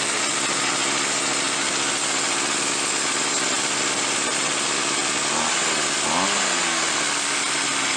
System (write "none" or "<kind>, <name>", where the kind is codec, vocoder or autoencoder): none